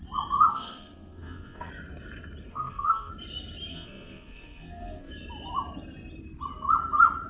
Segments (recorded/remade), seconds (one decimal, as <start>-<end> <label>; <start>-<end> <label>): 0.0-0.5 recorded; 0.5-1.7 remade; 1.7-2.5 recorded; 2.5-3.1 remade; 3.1-3.7 recorded; 3.7-5.1 remade; 5.1-7.3 recorded